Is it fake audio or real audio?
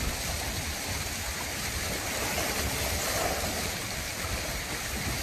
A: real